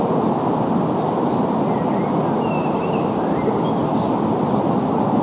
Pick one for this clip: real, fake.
real